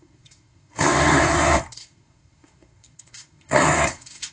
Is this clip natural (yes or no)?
no